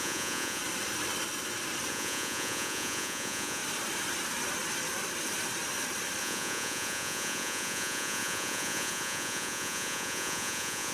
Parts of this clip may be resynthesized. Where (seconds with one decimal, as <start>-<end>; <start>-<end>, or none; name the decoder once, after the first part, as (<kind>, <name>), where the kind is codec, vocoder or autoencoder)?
0.0-0.6 (vocoder, Vocos); 1.9-3.6; 6.2-10.9